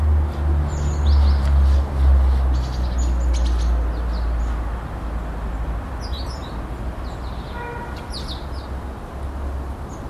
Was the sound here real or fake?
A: real